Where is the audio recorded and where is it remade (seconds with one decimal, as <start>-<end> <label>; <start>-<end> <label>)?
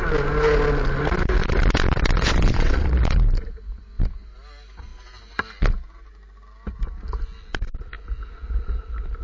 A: 0.0-2.2 recorded; 2.2-2.9 remade; 2.9-9.2 recorded